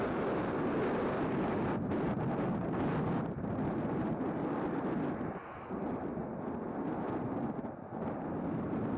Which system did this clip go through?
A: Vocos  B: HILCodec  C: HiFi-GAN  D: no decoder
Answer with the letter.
D